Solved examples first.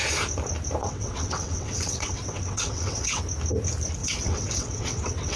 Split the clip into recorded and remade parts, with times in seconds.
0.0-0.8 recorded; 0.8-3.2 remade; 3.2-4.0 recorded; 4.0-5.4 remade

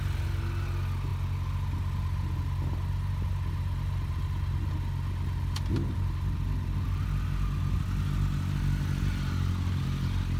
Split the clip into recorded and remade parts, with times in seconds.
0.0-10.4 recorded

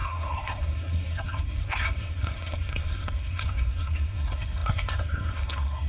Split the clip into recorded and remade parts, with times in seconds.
0.0-5.9 remade

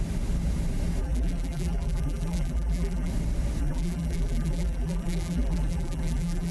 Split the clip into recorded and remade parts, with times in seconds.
0.0-1.0 recorded; 1.0-3.1 remade; 3.1-3.6 recorded; 3.6-6.5 remade